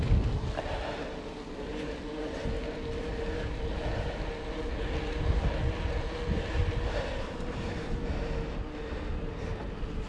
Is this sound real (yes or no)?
yes